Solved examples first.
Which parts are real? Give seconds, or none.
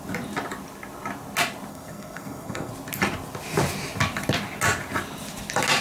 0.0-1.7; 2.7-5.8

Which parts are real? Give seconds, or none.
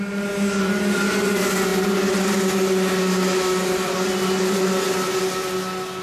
0.0-6.0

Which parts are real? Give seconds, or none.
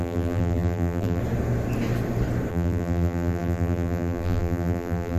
1.2-2.5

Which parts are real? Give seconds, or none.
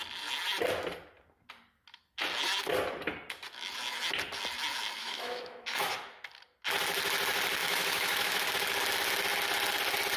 0.0-5.0; 5.8-7.6; 8.5-10.2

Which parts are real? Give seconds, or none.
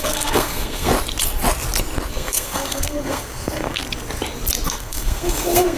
0.9-2.1; 3.8-4.7